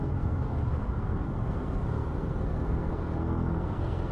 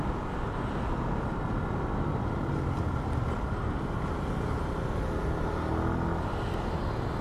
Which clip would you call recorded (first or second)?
second